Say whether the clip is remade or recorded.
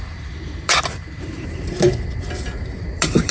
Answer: remade